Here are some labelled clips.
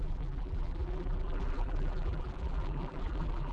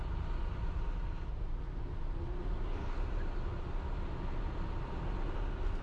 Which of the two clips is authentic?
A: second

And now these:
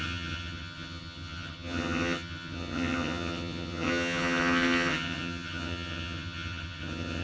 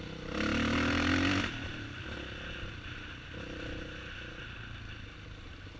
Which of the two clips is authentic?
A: second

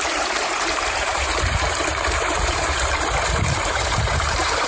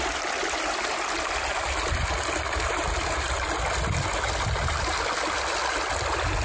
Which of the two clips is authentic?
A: second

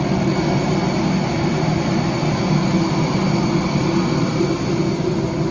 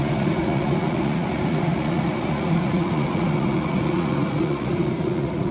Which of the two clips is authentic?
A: first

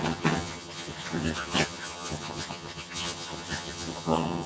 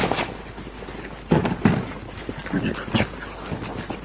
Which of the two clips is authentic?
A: second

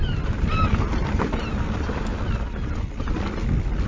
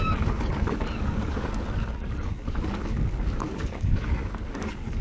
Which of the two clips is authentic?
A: first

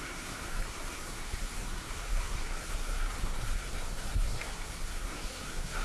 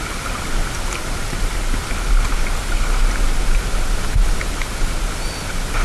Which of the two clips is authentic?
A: second